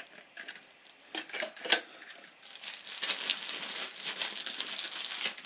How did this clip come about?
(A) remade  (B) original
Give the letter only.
B